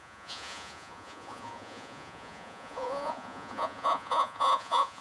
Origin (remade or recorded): remade